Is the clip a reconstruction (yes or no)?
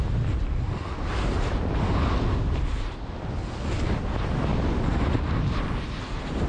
no